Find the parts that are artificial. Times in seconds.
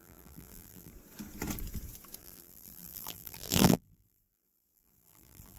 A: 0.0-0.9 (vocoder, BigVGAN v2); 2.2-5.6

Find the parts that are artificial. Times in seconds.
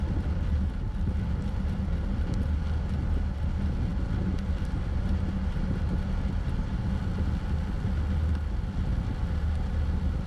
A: none